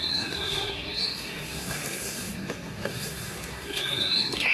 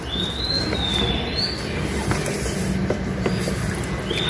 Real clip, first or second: second